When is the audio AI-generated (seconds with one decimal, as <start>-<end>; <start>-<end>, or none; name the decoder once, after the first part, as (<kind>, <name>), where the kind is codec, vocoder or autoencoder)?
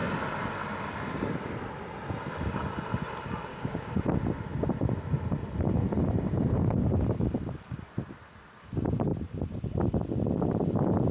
3.5-4.0 (codec, DAC)